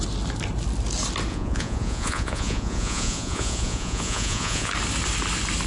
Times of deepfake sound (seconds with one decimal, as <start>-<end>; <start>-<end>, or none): 1.3-4.7